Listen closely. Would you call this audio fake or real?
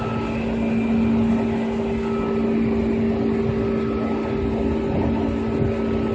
real